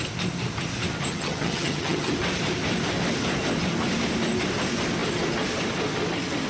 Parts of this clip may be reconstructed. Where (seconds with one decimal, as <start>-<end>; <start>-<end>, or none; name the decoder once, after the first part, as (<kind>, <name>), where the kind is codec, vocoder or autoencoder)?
1.1-2.1 (vocoder, HiFi-GAN)